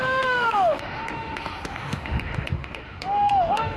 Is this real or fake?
fake